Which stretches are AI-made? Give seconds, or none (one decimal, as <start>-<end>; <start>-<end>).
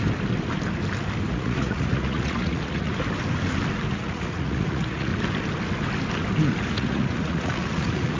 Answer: 1.3-2.9; 3.9-5.1; 6.7-8.2